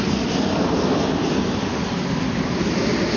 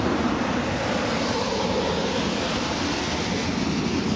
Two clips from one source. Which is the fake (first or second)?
second